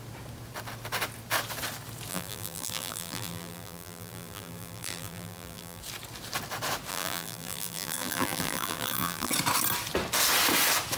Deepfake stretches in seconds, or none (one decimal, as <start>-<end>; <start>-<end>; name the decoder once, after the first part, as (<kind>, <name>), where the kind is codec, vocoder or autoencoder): 2.1-5.8 (vocoder, BigVGAN v2); 6.9-9.3

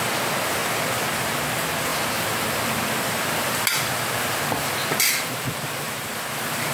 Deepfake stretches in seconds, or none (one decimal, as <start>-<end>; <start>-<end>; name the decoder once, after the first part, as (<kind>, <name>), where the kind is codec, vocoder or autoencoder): 1.9-5.9 (vocoder, BigVGAN v2)

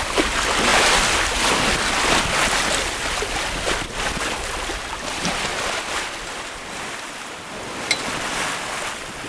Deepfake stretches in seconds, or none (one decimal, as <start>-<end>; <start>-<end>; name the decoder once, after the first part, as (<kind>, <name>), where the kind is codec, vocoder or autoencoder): none

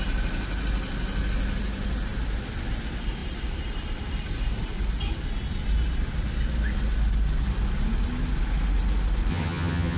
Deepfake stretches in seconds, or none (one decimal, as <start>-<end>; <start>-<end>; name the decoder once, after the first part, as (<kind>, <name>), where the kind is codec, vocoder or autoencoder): 9.3-10.0 (vocoder, HiFi-GAN)

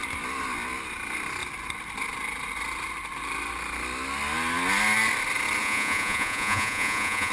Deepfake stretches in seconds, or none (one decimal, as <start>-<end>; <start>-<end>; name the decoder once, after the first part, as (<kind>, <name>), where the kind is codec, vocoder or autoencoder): 5.6-7.3 (vocoder, Vocos)

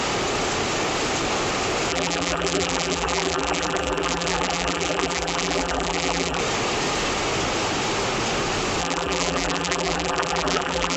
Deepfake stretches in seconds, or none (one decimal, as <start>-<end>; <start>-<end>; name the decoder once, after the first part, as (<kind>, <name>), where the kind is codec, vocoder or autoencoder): 1.9-6.4 (vocoder, BigVGAN v2); 8.8-11.0